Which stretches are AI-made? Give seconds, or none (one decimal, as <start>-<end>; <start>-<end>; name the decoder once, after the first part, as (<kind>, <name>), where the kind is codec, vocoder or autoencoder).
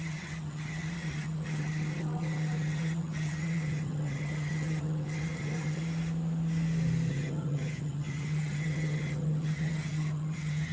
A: 0.0-5.8 (vocoder, HiFi-GAN); 7.1-10.7